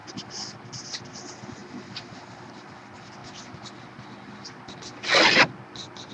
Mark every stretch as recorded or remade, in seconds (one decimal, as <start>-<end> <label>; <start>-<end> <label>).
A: 0.0-1.6 recorded; 1.6-2.1 remade; 2.1-6.1 recorded